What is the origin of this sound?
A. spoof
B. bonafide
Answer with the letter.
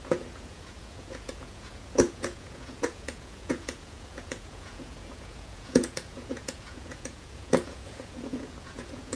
A